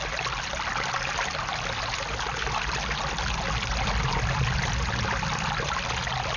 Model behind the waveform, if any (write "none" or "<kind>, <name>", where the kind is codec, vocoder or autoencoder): none